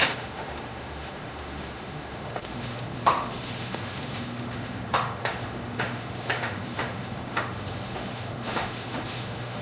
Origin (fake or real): fake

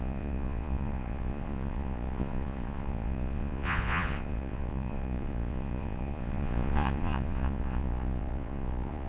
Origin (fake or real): fake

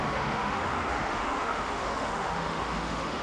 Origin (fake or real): fake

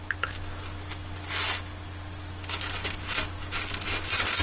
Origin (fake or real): real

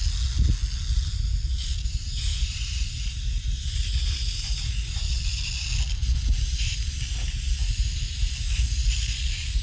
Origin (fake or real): real